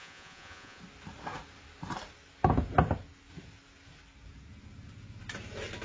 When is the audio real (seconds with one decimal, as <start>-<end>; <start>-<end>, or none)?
0.8-5.8